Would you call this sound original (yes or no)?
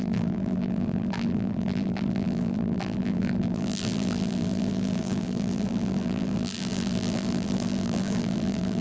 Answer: no